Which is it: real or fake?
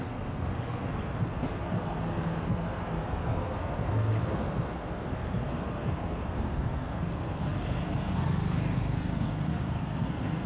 fake